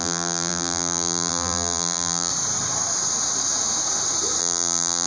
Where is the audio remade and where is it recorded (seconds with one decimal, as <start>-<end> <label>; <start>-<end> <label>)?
0.0-2.3 remade; 2.3-4.4 recorded; 4.4-5.1 remade